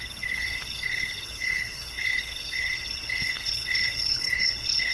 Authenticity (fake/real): fake